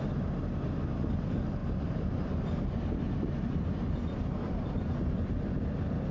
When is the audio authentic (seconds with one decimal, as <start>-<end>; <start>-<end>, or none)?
0.0-1.6; 5.3-6.1